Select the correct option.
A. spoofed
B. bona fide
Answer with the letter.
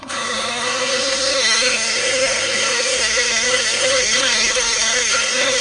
A